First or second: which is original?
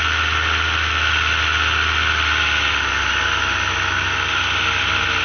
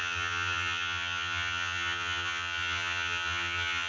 first